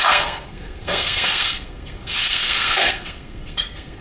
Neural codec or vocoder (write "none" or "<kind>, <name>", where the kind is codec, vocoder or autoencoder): codec, SNAC